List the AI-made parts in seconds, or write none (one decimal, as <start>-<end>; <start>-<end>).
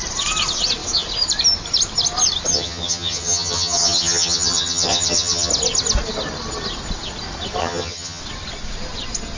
2.5-5.5; 7.6-8.2